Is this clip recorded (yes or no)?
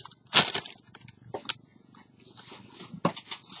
yes